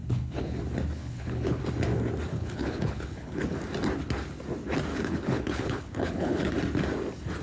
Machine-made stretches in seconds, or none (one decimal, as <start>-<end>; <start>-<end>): 0.0-0.6; 1.0-1.6; 2.3-3.6; 4.9-6.5

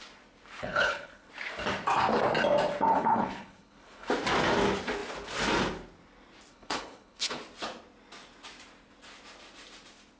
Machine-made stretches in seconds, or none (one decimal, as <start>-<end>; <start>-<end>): 0.6-1.3; 2.9-4.1; 6.5-7.4

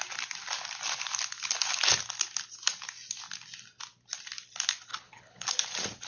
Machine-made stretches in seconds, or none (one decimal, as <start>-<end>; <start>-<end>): 4.9-5.5